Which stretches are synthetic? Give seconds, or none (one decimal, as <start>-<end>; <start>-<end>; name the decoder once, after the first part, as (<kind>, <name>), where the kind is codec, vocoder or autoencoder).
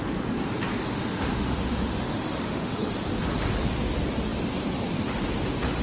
0.9-2.9 (autoencoder, DAC-VAE)